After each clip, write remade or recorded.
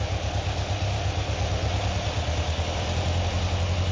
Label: recorded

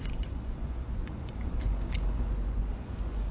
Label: remade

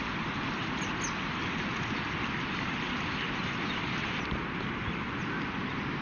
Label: recorded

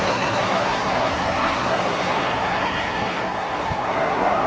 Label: remade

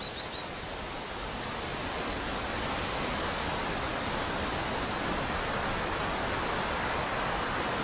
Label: recorded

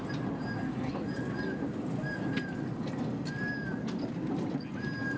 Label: recorded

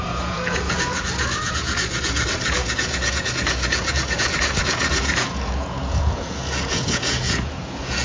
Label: remade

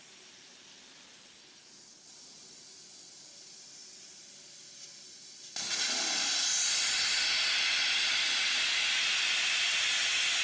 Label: recorded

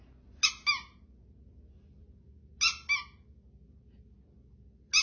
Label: recorded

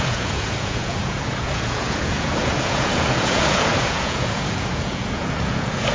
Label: remade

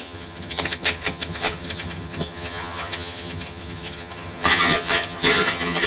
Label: remade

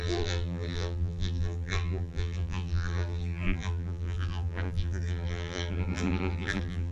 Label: remade